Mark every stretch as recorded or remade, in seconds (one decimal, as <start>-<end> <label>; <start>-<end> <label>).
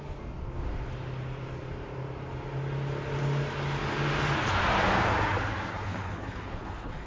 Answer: 0.0-5.7 recorded; 5.7-7.1 remade